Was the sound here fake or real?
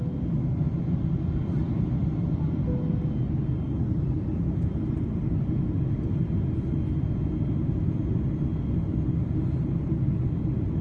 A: real